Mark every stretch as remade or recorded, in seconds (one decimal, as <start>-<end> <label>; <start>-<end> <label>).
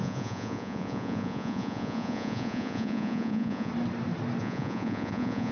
0.0-3.7 remade; 3.7-4.4 recorded; 4.4-5.5 remade